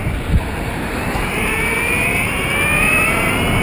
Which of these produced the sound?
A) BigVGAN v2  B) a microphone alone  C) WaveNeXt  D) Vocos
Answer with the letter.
A